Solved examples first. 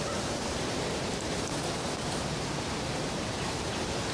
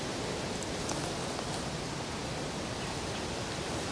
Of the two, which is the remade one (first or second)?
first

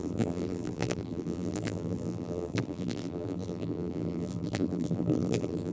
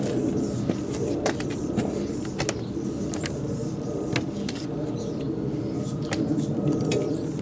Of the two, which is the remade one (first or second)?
first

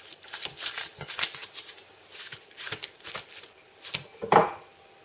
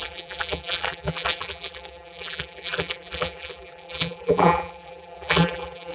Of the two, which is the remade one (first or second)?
second